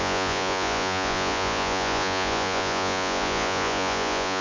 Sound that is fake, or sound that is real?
fake